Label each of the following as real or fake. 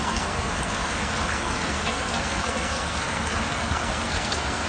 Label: fake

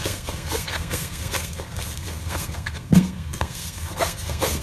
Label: fake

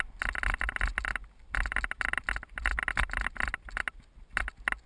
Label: real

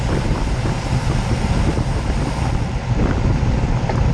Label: real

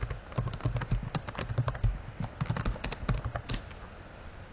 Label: real